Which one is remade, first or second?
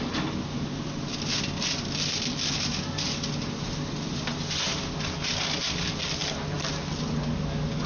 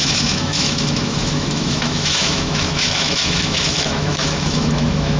second